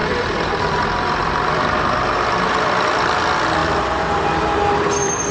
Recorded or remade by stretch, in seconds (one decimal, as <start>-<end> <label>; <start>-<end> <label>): 0.0-3.2 remade; 3.2-3.6 recorded; 3.6-5.3 remade